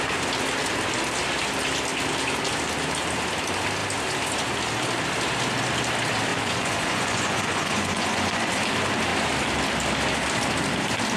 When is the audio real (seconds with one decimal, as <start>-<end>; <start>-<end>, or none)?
0.0-6.3; 8.5-11.2